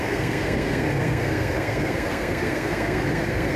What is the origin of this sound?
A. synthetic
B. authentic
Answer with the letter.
A